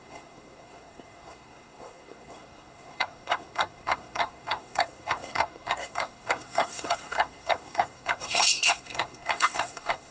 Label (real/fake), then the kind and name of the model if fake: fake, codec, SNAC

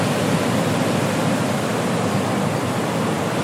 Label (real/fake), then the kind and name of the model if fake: real